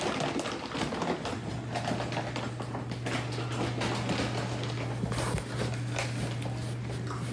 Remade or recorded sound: recorded